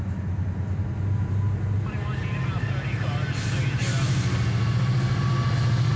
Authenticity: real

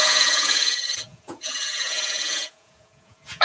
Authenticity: fake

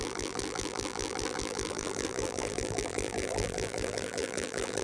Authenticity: fake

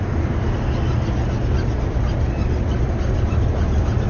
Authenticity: real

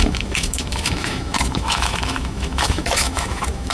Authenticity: fake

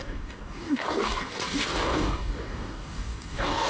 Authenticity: fake